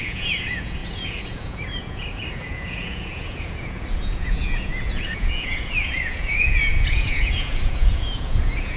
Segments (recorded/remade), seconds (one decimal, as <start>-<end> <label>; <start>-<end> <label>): 0.0-8.8 remade